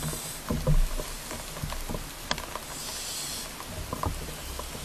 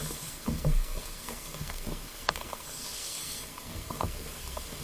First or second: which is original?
first